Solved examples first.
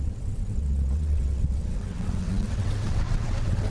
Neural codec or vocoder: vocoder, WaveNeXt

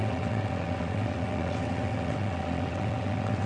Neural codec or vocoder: vocoder, WaveNeXt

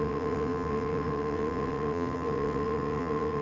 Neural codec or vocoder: vocoder, WaveNeXt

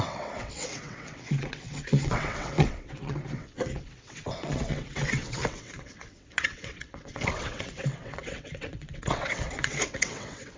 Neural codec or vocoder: vocoder, WaveNeXt